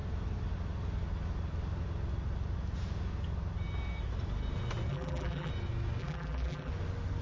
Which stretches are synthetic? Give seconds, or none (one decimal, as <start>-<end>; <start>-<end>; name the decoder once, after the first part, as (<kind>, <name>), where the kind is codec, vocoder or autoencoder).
4.9-5.5 (vocoder, BigVGAN v2); 6.0-6.7